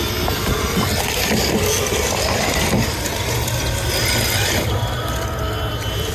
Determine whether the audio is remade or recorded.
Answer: recorded